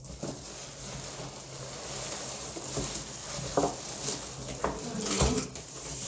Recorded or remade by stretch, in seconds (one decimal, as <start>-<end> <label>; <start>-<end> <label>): 0.0-6.1 recorded